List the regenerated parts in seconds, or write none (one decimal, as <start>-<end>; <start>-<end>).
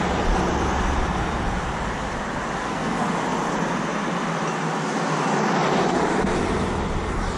2.6-3.1